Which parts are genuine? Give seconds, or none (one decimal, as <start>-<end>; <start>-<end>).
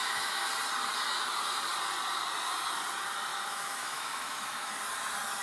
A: 0.5-3.3; 4.7-5.4